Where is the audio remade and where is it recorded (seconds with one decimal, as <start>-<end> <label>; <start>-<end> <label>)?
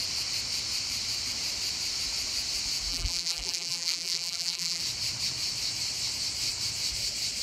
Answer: 0.0-2.9 recorded; 2.9-4.8 remade; 4.8-7.4 recorded